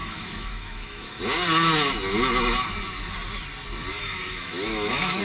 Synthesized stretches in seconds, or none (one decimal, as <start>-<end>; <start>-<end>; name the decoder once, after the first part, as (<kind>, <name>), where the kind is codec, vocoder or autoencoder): 0.0-1.2 (autoencoder, DAC-VAE); 3.9-5.2